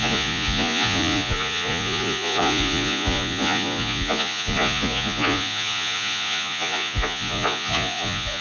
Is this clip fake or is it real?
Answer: fake